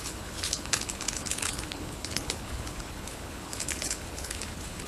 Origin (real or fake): fake